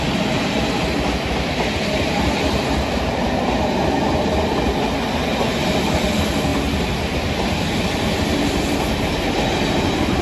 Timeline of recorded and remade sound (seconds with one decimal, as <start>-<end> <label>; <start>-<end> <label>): 0.0-10.2 recorded